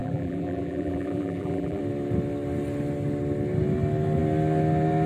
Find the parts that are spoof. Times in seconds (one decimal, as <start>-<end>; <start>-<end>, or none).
0.0-1.8